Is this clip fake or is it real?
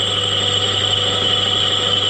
real